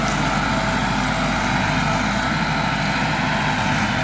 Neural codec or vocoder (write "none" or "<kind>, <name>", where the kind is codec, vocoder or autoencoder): none